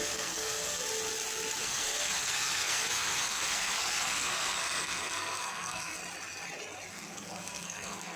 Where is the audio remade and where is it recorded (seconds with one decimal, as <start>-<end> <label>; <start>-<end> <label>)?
0.0-0.8 remade; 0.8-1.6 recorded; 1.6-6.0 remade; 6.0-6.9 recorded; 6.9-8.2 remade